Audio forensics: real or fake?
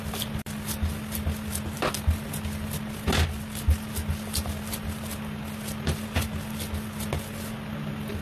real